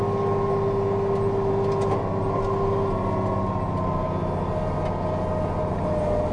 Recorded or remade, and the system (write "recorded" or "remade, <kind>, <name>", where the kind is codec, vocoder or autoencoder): recorded